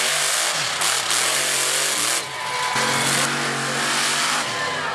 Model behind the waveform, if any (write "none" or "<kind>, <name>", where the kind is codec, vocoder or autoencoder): none